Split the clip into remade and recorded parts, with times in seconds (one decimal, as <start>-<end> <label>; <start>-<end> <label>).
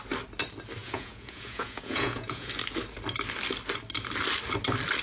0.0-0.8 recorded; 0.8-2.5 remade; 2.5-5.0 recorded